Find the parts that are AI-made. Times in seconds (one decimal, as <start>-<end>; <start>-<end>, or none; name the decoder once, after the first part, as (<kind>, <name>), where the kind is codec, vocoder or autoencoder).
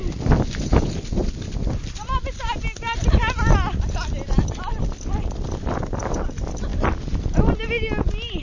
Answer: none